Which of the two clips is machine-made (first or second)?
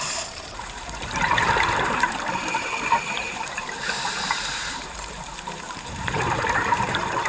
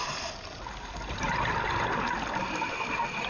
first